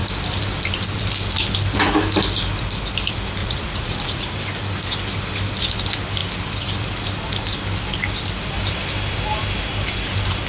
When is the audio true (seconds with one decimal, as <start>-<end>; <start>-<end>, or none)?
0.0-3.4; 4.4-10.5